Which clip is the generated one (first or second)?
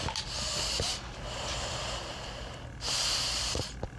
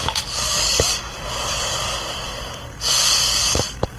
second